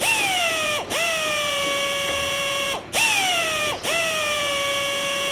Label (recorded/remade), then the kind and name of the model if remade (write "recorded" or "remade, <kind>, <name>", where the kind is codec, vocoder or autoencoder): remade, vocoder, Vocos